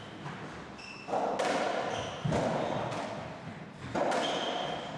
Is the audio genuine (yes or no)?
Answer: yes